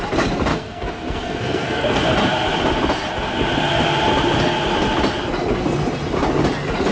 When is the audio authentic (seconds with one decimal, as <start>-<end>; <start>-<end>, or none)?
0.0-0.5; 2.1-6.9

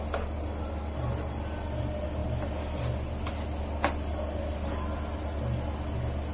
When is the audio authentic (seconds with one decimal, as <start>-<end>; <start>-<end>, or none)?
0.0-6.3

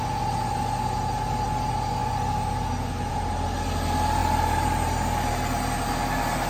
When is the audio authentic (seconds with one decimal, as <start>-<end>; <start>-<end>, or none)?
0.0-6.5

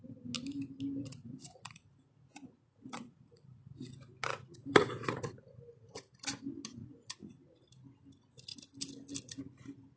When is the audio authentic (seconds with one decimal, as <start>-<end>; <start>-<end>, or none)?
0.0-1.0; 3.9-4.3; 5.3-6.8; 7.6-10.0

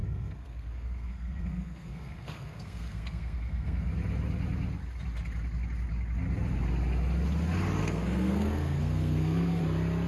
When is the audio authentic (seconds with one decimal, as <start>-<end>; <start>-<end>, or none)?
3.9-7.8; 9.6-10.1

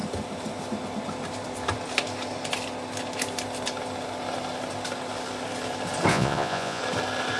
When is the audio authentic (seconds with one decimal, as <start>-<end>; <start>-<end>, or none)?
0.0-6.1; 6.8-7.4

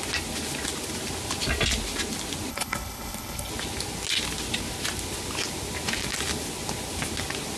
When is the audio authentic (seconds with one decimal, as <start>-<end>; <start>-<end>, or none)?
0.0-2.5; 3.5-7.6

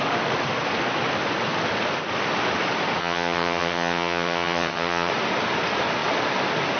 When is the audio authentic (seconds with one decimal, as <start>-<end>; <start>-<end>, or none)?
0.0-3.0; 5.1-6.8